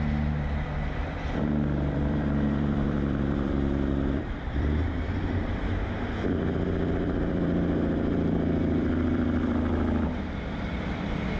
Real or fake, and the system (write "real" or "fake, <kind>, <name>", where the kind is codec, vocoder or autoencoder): fake, vocoder, BigVGAN v2